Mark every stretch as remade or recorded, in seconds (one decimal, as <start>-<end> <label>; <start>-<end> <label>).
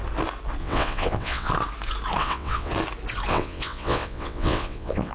0.0-0.6 recorded; 0.6-1.5 remade; 1.5-2.2 recorded; 2.2-2.7 remade; 2.7-3.3 recorded; 3.3-5.1 remade